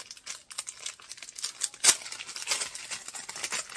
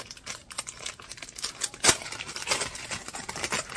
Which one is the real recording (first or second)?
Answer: first